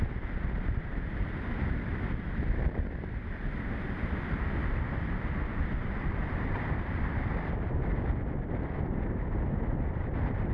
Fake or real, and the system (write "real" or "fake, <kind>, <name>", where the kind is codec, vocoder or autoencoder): fake, vocoder, BigVGAN v2